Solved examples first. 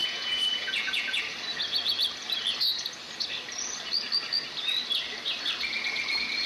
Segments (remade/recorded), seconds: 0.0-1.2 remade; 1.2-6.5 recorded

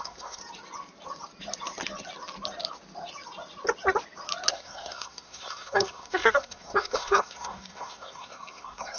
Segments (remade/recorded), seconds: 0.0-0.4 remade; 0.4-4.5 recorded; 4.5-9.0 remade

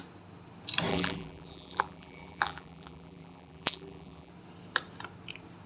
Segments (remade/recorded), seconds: 0.0-0.9 recorded; 0.9-4.3 remade; 4.3-5.7 recorded